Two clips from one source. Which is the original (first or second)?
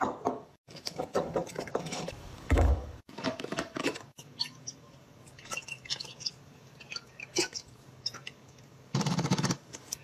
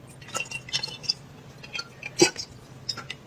second